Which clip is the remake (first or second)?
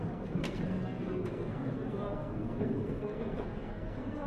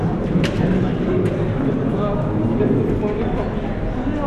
first